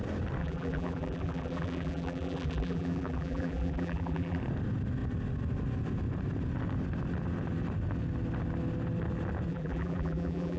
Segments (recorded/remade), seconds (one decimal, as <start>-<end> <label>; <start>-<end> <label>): 0.0-0.4 recorded; 0.4-4.4 remade; 4.4-9.5 recorded; 9.5-10.6 remade